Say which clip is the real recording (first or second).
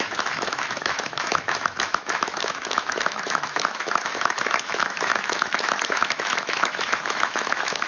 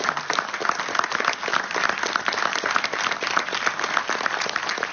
second